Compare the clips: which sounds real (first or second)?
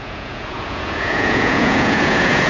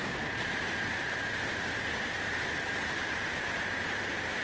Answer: second